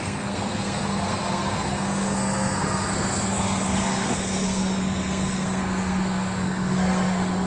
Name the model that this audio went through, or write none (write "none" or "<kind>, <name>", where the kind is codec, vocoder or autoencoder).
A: codec, SNAC